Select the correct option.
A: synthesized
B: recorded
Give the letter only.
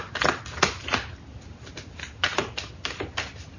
B